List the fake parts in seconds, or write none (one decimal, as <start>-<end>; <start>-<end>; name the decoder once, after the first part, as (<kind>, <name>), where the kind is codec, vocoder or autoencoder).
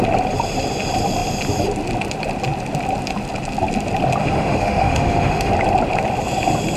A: 4.2-5.5 (autoencoder, DAC-VAE)